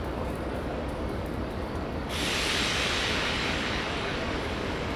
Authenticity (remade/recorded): remade